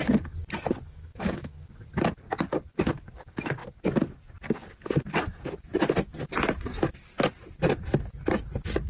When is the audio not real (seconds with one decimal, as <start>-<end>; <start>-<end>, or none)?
1.0-1.7